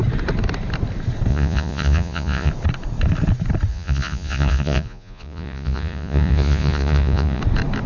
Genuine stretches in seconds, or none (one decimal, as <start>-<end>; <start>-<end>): 0.0-1.3; 2.5-3.7; 7.4-7.9